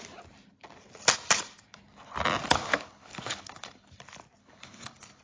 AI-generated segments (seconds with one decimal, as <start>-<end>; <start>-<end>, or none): 2.4-3.9; 4.4-5.2